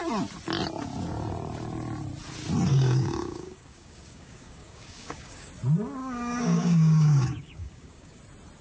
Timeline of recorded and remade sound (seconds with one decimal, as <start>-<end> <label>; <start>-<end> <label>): 0.0-2.7 recorded; 2.7-5.5 remade; 5.5-6.0 recorded; 6.0-8.2 remade; 8.2-8.6 recorded